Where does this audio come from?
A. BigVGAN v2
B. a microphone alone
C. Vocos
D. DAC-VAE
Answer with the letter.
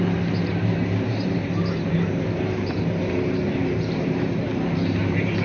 A